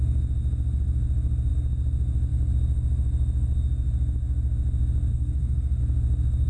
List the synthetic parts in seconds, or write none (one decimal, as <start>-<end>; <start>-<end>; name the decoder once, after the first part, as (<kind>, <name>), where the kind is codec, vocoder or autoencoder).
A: 5.1-5.8 (codec, SNAC)